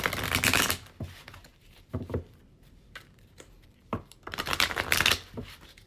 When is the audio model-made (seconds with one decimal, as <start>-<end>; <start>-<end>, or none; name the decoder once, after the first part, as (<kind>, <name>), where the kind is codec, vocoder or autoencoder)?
1.5-5.0 (vocoder, BigVGAN v2)